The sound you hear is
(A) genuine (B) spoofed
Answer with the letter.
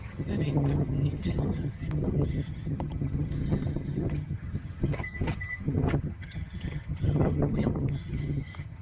B